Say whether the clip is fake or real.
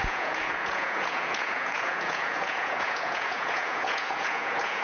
fake